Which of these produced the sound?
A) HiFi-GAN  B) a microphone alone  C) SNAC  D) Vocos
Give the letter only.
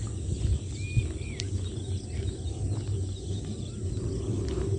B